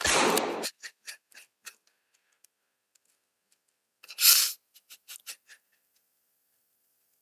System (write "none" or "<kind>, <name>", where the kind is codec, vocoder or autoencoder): none